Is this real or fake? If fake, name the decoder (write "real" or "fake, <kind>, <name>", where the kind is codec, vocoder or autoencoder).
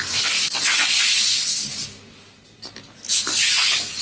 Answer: real